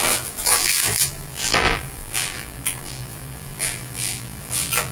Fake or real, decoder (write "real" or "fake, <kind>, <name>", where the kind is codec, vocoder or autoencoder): fake, vocoder, BigVGAN v2